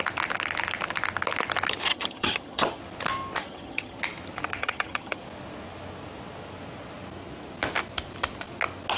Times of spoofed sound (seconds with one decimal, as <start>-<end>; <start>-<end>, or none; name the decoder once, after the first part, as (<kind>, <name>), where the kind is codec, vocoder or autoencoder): 1.9-2.8 (vocoder, HiFi-GAN); 3.4-4.0; 4.6-5.2